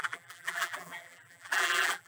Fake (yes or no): yes